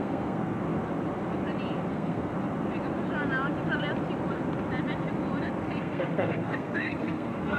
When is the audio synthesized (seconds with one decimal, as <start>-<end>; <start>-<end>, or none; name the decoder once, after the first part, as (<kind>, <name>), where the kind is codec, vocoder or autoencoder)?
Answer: 0.0-0.6 (codec, SNAC); 1.9-2.3; 5.8-7.6